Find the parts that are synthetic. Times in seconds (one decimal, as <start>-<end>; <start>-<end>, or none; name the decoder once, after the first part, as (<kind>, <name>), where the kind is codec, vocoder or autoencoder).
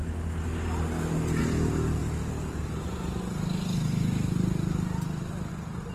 1.4-2.0 (vocoder, BigVGAN v2); 5.5-5.9